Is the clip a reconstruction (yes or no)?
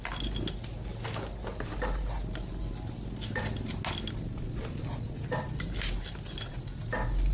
no